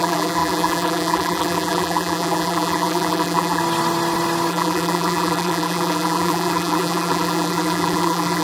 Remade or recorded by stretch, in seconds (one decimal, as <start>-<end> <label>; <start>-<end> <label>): 0.0-3.6 remade; 3.6-4.5 recorded; 4.5-8.4 remade